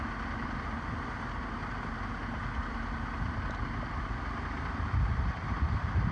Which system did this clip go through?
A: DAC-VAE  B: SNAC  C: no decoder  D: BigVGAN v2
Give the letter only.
C